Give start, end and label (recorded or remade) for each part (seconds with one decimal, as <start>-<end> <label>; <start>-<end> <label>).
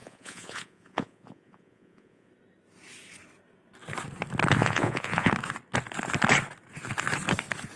0.0-2.3 remade; 2.3-4.6 recorded; 4.6-5.3 remade; 5.3-7.8 recorded